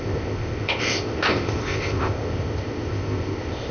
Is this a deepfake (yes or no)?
yes